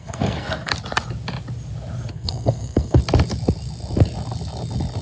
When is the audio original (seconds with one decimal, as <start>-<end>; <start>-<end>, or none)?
0.7-2.1; 3.0-5.0